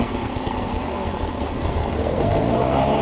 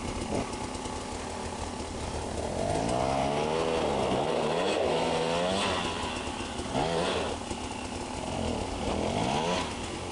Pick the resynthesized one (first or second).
first